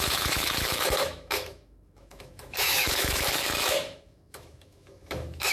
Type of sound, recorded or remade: remade